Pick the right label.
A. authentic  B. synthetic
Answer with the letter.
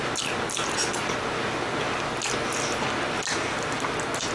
A